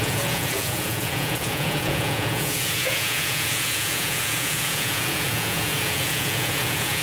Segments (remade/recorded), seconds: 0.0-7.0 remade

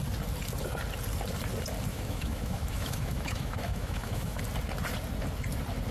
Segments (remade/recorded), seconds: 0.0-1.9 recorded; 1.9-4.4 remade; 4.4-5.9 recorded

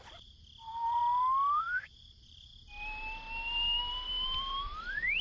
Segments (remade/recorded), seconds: 0.0-1.0 remade; 1.0-1.6 recorded; 1.6-2.5 remade; 2.5-3.9 recorded; 3.9-5.2 remade